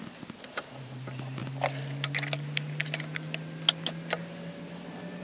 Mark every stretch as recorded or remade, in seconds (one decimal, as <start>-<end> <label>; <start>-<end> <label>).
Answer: 0.0-5.2 recorded